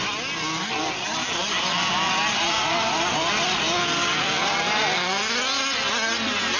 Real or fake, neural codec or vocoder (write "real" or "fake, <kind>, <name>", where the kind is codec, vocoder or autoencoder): real